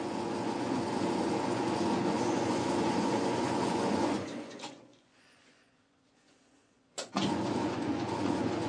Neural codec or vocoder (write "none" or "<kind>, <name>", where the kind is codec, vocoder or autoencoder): vocoder, Vocos